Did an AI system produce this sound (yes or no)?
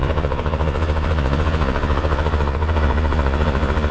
yes